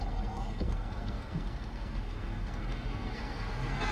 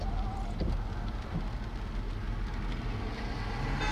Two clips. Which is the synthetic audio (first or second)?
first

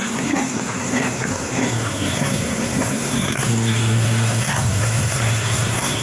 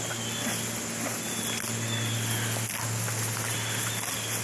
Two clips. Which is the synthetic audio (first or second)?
first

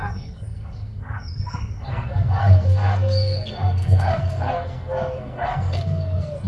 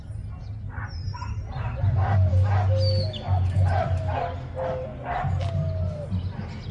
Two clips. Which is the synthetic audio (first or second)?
first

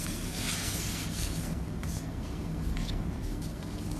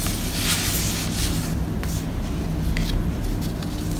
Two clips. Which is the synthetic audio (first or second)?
first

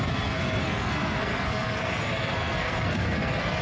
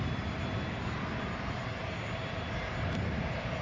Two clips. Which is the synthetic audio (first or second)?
first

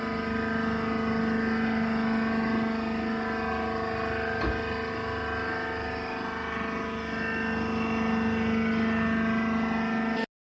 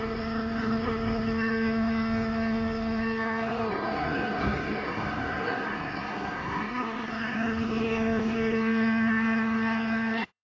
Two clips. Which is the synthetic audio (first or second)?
second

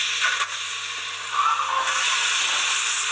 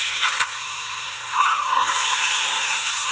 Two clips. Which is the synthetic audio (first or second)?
second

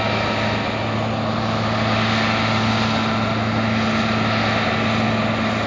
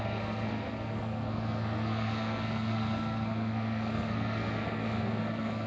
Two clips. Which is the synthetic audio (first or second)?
second